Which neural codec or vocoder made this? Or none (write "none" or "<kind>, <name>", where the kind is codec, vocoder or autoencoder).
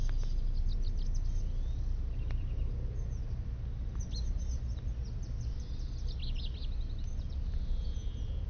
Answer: none